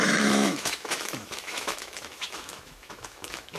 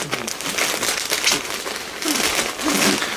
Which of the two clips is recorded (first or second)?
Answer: second